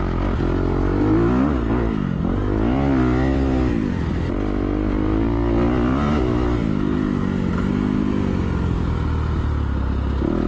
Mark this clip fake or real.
real